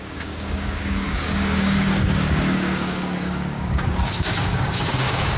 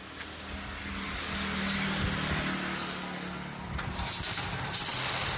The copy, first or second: first